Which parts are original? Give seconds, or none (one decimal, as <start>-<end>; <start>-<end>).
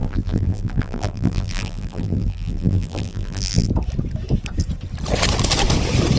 3.7-6.2